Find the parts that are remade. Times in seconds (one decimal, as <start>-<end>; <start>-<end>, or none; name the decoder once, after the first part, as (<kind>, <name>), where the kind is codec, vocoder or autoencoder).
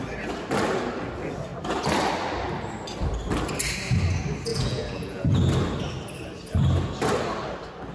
4.5-5.5 (vocoder, Vocos)